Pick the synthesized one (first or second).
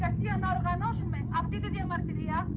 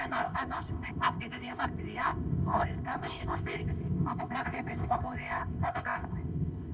second